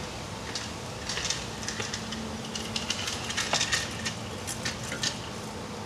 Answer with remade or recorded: recorded